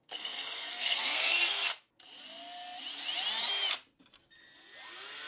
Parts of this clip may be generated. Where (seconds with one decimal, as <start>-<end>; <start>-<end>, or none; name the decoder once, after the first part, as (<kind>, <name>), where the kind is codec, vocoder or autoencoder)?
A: 0.0-1.7 (codec, SNAC)

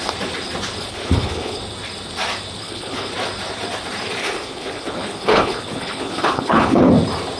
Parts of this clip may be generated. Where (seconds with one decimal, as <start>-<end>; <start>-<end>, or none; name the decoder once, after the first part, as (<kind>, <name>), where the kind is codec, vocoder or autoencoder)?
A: 0.9-1.6 (codec, HILCodec); 2.6-3.1; 4.2-6.9

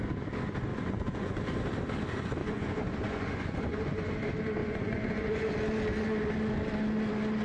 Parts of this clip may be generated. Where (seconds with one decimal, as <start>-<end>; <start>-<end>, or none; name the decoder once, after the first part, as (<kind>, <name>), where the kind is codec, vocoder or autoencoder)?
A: 0.7-1.4 (vocoder, Vocos); 2.4-4.0; 4.6-5.5

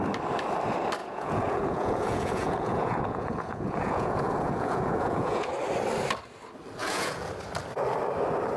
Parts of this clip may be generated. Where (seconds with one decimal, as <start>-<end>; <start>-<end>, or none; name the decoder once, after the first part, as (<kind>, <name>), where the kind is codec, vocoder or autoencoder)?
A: 1.0-5.5 (vocoder, Vocos); 6.8-7.3

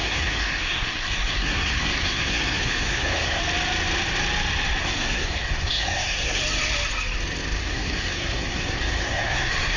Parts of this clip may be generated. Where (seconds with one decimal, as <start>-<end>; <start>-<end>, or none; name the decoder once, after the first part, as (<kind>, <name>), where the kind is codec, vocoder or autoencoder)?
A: 0.0-3.4 (codec, SNAC); 4.8-6.4; 7.6-9.8